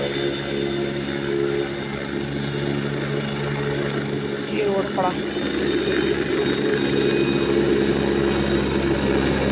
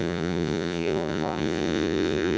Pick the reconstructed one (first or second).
second